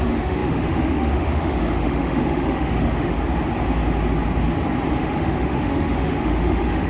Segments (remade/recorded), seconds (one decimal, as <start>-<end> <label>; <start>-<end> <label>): 0.0-3.1 remade; 3.1-4.9 recorded; 4.9-6.9 remade